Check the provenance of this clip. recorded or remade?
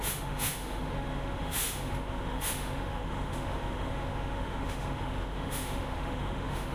remade